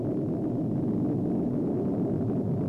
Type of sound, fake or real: real